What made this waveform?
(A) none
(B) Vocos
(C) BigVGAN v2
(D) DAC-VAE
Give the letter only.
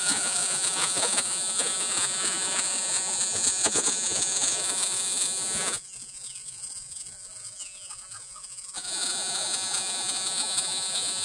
B